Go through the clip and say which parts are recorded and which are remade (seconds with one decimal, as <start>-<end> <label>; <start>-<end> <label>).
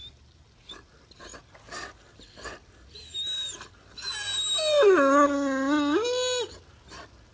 0.0-7.3 recorded